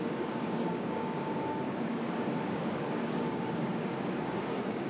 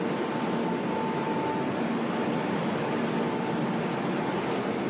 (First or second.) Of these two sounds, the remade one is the first